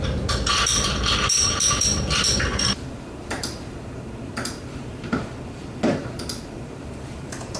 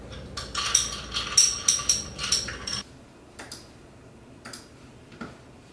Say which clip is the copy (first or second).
first